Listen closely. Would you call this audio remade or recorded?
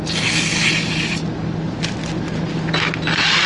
recorded